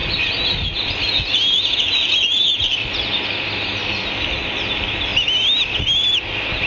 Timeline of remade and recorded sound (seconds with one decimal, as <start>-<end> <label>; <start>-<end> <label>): 0.0-6.7 recorded